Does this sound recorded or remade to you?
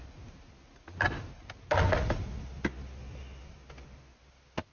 recorded